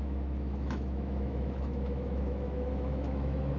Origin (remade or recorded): remade